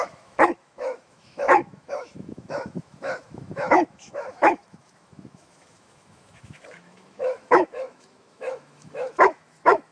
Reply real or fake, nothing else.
fake